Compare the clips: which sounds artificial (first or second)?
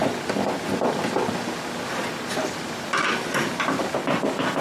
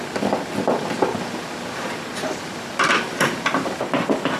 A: second